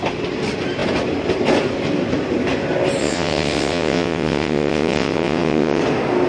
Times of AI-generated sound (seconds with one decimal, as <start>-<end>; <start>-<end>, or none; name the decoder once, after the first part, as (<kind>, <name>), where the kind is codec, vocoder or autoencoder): 3.0-5.8 (vocoder, WaveNeXt)